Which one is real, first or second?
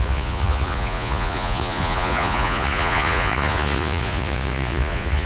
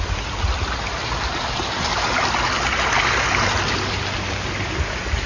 second